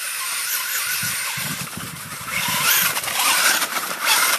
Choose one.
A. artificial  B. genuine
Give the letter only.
A